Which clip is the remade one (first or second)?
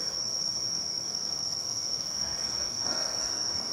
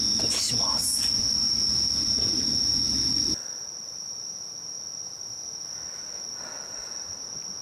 first